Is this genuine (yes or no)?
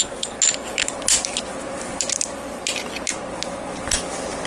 yes